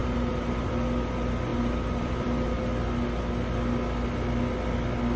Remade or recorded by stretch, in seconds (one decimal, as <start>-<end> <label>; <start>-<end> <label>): 0.0-0.7 remade; 0.7-1.5 recorded; 1.5-2.6 remade; 2.6-5.2 recorded